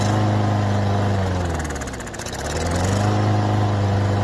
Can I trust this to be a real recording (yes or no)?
yes